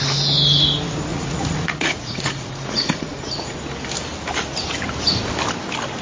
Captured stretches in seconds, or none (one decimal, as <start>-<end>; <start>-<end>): 0.0-1.1; 3.6-6.0